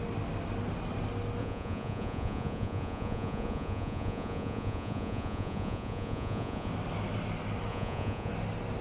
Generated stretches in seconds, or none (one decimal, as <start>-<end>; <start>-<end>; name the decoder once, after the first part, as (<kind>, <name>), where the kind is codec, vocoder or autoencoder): 1.4-6.7 (vocoder, Vocos); 7.7-8.3